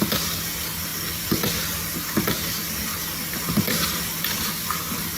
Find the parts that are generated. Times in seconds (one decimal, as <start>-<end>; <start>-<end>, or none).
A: none